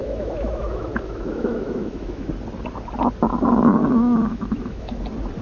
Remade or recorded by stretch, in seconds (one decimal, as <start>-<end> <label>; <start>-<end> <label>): 0.0-2.3 remade; 2.3-3.8 recorded; 3.8-5.0 remade; 5.0-5.4 recorded